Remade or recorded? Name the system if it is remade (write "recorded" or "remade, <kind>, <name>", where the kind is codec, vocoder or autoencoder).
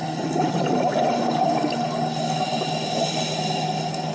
recorded